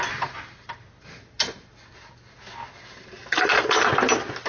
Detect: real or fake real